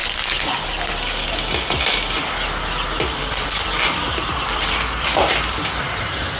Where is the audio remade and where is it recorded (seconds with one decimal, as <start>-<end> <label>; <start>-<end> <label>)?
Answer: 0.0-3.0 recorded; 3.0-6.4 remade